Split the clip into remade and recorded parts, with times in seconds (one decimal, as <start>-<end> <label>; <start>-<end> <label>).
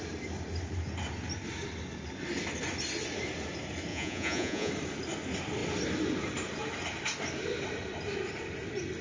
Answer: 0.0-3.9 recorded; 3.9-4.7 remade; 4.7-9.0 recorded